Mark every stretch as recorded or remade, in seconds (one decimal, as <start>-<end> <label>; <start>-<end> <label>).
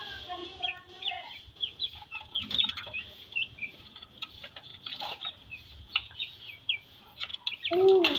0.0-7.3 remade; 7.3-8.2 recorded